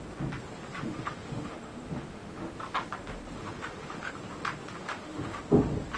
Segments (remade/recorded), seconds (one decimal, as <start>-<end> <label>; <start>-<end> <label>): 0.0-0.8 recorded; 0.8-2.5 remade; 2.5-3.4 recorded; 3.4-4.1 remade; 4.1-4.8 recorded; 4.8-5.4 remade; 5.4-6.0 recorded